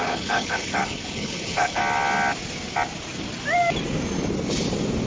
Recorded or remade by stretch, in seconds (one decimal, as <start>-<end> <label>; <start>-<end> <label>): 0.0-1.8 remade; 1.8-5.1 recorded